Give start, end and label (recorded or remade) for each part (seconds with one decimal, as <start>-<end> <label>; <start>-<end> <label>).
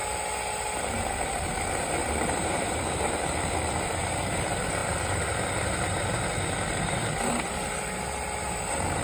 0.0-2.0 recorded; 2.0-2.8 remade; 2.8-9.0 recorded